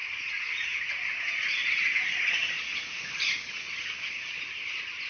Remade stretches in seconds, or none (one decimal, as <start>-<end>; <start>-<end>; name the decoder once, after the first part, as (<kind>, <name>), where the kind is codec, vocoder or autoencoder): 0.0-2.0 (vocoder, Vocos)